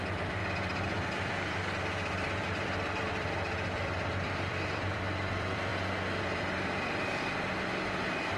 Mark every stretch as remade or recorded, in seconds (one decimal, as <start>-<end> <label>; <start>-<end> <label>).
0.0-5.7 remade; 5.7-7.2 recorded; 7.2-8.4 remade